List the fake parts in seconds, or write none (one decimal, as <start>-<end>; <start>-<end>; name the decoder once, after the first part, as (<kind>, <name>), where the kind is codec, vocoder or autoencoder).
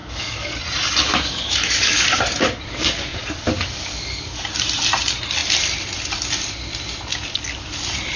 0.0-0.6 (codec, DAC); 1.0-4.4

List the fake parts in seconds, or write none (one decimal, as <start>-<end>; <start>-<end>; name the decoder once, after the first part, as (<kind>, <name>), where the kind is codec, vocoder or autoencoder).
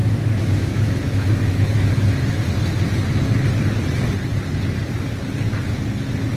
0.0-1.9 (autoencoder, DAC-VAE)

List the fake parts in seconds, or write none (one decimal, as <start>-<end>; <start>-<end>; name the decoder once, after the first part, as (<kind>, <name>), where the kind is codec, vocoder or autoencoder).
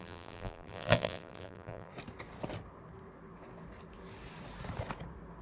0.0-1.9 (vocoder, BigVGAN v2)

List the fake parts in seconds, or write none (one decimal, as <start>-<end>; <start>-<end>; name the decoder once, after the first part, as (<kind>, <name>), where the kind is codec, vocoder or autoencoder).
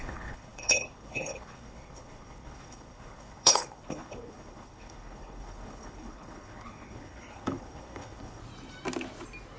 0.0-8.4 (codec, HILCodec)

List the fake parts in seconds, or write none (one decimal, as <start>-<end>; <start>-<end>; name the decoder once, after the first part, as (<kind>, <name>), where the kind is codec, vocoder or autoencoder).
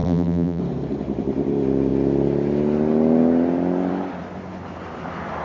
0.0-0.6 (vocoder, BigVGAN v2)